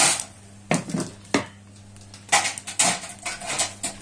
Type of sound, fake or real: real